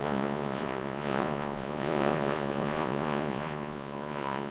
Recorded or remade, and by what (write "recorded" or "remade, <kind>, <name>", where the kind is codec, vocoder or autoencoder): remade, vocoder, Vocos